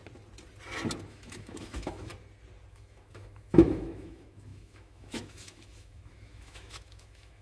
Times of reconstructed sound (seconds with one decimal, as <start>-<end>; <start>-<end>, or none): 1.1-2.1; 2.7-7.4